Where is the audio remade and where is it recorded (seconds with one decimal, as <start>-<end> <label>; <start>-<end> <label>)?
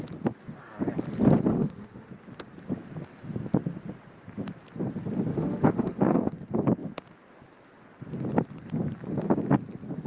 0.0-1.5 recorded; 1.5-2.1 remade; 2.1-5.3 recorded; 5.3-6.3 remade; 6.3-10.1 recorded